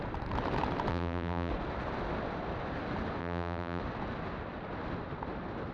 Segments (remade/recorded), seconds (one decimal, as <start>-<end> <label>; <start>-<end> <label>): 0.0-0.9 recorded; 0.9-1.5 remade; 1.5-3.2 recorded; 3.2-3.8 remade; 3.8-5.7 recorded